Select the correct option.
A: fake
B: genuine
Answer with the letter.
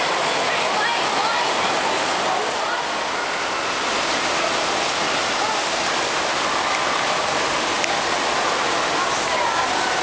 B